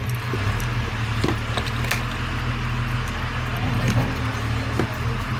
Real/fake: real